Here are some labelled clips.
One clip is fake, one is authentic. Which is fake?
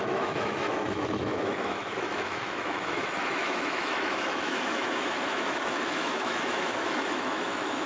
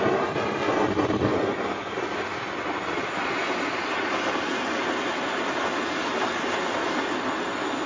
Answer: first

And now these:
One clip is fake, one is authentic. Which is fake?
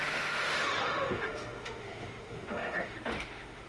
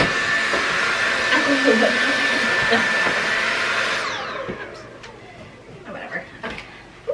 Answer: first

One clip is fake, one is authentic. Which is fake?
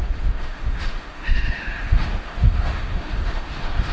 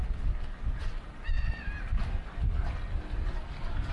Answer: first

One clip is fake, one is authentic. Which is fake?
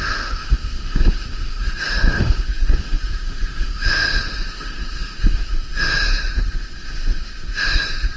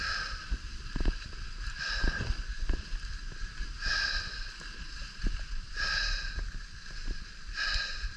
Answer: first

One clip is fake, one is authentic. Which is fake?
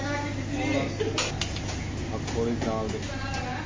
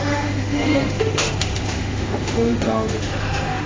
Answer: second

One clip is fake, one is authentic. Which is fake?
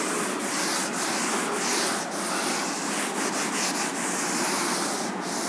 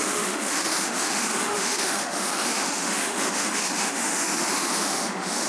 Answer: second